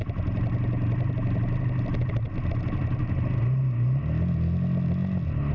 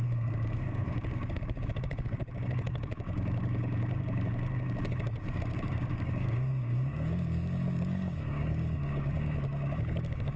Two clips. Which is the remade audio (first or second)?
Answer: second